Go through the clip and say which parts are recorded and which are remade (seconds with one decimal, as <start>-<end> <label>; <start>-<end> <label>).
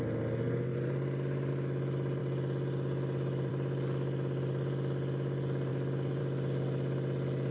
0.0-0.7 recorded; 0.7-1.5 remade; 1.5-5.7 recorded; 5.7-6.2 remade; 6.2-7.5 recorded